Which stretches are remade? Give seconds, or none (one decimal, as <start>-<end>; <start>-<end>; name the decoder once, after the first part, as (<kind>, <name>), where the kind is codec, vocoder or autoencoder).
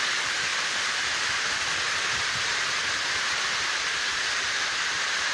0.5-3.7 (vocoder, BigVGAN v2)